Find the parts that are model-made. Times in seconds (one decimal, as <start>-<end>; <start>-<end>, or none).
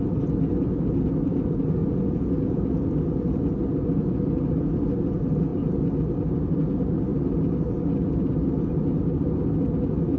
1.8-2.9